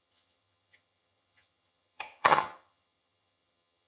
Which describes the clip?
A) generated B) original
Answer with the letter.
A